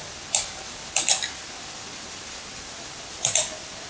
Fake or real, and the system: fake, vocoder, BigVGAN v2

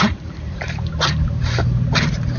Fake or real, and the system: fake, vocoder, BigVGAN v2